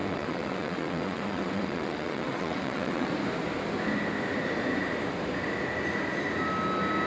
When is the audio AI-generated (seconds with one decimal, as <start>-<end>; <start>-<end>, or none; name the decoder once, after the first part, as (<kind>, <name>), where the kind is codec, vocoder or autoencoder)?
0.0-3.1 (vocoder, WaveNeXt)